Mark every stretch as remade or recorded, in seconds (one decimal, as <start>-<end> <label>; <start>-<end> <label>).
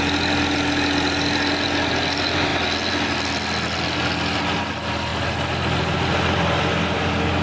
0.0-7.4 recorded